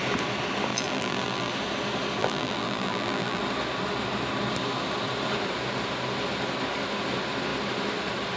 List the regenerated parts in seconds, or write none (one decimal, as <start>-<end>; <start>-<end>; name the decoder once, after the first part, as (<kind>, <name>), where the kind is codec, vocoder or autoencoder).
0.7-1.5 (vocoder, BigVGAN v2); 2.2-3.4